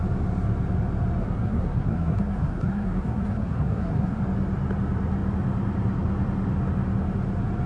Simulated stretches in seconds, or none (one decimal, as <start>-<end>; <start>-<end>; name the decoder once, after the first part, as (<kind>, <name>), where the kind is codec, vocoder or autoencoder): 1.2-4.2 (codec, SNAC)

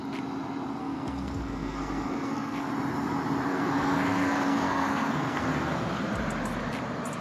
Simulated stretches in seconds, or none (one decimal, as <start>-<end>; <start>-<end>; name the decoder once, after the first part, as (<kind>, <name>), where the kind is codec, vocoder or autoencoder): 0.8-2.7 (codec, SNAC); 3.5-5.9

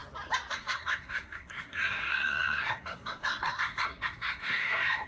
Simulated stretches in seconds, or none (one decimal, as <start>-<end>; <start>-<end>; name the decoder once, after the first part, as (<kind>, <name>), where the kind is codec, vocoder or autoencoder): 0.5-5.1 (codec, SNAC)